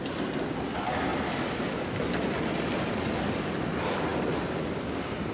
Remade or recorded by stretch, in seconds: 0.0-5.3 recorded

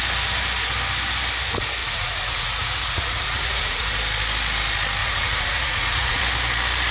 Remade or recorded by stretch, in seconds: 0.0-1.8 recorded; 1.8-4.0 remade; 4.0-5.0 recorded; 5.0-6.2 remade; 6.2-6.9 recorded